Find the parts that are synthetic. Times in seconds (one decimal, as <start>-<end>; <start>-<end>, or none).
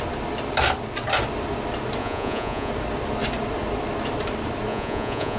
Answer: 2.0-2.7; 4.7-5.4